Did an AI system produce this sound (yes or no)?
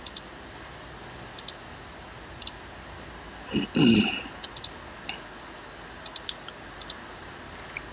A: no